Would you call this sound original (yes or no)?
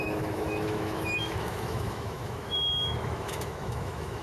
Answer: no